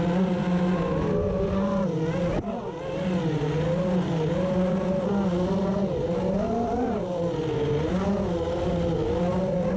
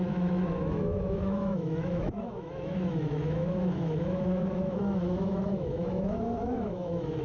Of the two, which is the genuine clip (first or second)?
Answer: first